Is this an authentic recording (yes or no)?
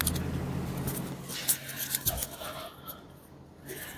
yes